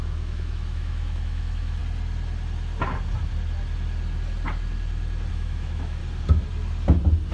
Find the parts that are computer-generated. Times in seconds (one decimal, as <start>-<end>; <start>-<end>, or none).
0.0-1.8; 5.3-6.0